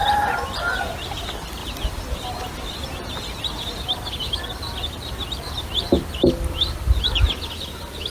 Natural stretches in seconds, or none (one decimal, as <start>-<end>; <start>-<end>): 0.0-8.1